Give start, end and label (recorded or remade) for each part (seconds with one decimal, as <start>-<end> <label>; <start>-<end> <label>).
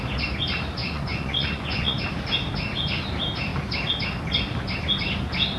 0.0-0.8 recorded; 0.8-2.0 remade; 2.0-5.6 recorded